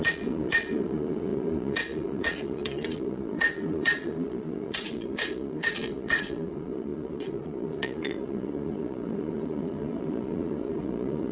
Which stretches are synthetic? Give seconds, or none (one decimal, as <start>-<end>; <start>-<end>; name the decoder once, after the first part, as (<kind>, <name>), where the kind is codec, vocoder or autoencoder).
0.0-11.3 (vocoder, Vocos)